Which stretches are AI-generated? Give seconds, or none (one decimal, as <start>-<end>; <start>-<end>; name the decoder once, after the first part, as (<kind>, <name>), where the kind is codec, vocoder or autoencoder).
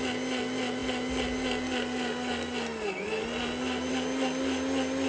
none